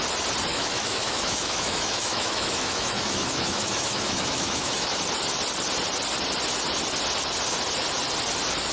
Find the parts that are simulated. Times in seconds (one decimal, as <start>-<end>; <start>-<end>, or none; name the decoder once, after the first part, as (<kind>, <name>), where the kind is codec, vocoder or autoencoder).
0.5-5.0 (autoencoder, DAC-VAE)